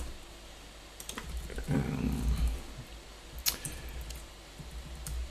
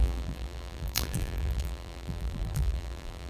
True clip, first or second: first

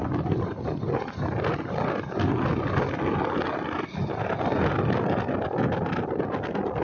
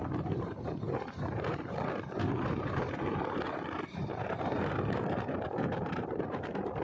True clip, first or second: first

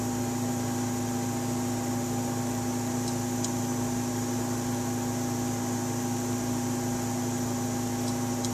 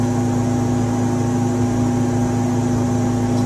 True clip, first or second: second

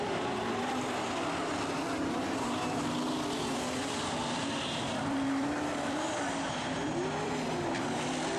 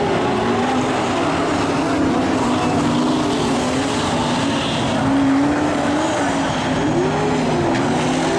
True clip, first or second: second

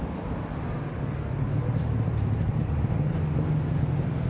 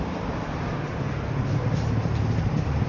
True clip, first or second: first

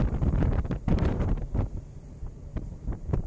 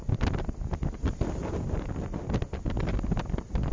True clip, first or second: second